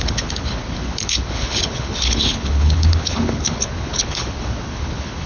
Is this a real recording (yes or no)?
no